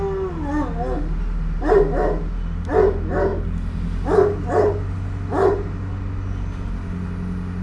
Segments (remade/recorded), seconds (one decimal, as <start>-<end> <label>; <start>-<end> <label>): 0.0-7.6 recorded

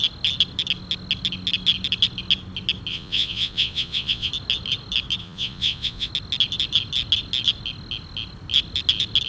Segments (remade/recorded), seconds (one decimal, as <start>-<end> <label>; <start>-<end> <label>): 0.0-2.9 recorded; 2.9-4.3 remade; 4.3-5.2 recorded; 5.2-6.1 remade; 6.1-9.3 recorded

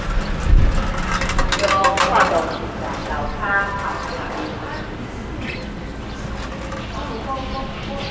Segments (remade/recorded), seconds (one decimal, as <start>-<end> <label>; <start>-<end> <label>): 0.0-3.0 recorded; 3.0-3.5 remade; 3.5-8.1 recorded

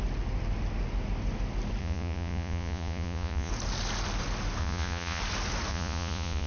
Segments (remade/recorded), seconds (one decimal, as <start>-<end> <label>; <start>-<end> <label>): 0.0-1.8 recorded; 1.8-3.5 remade; 3.5-4.6 recorded; 4.6-5.2 remade; 5.2-5.7 recorded; 5.7-6.5 remade